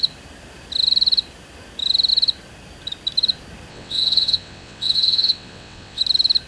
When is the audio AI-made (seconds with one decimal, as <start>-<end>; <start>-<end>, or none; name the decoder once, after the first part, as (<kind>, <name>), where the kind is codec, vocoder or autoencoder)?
3.7-6.0 (vocoder, WaveNeXt)